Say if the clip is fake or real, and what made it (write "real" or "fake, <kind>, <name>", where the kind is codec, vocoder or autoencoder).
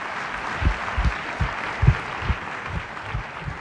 real